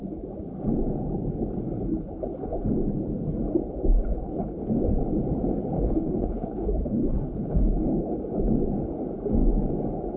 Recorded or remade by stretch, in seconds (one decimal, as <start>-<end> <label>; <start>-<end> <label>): 0.0-1.7 recorded; 1.7-2.7 remade; 2.7-4.1 recorded; 4.1-4.6 remade; 4.6-5.6 recorded; 5.6-8.2 remade; 8.2-10.2 recorded

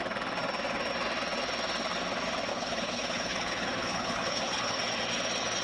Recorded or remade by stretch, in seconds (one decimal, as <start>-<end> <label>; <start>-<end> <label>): 0.0-2.5 recorded; 2.5-4.8 remade; 4.8-5.6 recorded

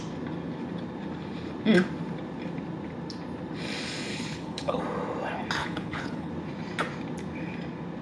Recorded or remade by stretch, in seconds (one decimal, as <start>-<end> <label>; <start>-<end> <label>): 0.0-4.1 recorded; 4.1-4.8 remade; 4.8-5.6 recorded; 5.6-6.3 remade; 6.3-8.0 recorded

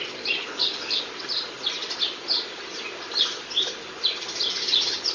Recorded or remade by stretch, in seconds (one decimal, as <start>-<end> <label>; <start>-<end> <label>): 0.0-0.4 recorded; 0.4-1.0 remade; 1.0-5.1 recorded

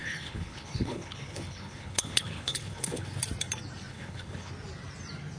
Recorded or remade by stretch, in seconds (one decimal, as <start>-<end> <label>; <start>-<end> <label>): 0.0-3.2 remade; 3.2-3.9 recorded; 3.9-4.5 remade; 4.5-5.4 recorded

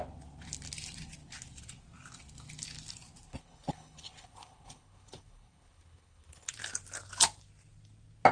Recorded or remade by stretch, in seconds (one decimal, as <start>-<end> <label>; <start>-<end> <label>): 0.0-3.3 recorded; 3.3-6.5 remade; 6.5-8.3 recorded